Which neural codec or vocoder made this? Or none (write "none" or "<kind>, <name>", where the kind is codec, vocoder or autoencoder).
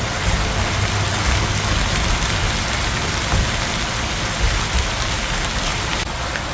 none